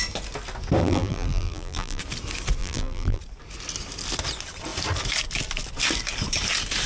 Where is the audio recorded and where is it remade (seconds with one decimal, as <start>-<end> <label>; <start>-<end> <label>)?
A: 0.0-0.8 recorded; 0.8-2.0 remade; 2.0-2.6 recorded; 2.6-3.2 remade; 3.2-6.9 recorded

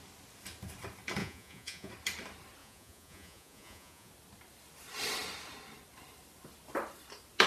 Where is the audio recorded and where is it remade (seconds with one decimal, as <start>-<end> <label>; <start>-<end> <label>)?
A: 0.0-1.2 recorded; 1.2-1.9 remade; 1.9-2.6 recorded; 2.6-4.1 remade; 4.1-7.5 recorded

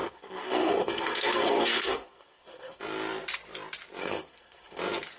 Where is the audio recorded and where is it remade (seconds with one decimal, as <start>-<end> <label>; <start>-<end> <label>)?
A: 0.0-2.8 remade; 2.8-4.0 recorded; 4.0-4.8 remade; 4.8-5.2 recorded

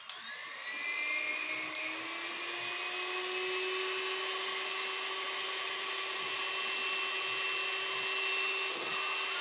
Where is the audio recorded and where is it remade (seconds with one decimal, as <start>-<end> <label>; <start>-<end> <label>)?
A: 0.0-9.4 recorded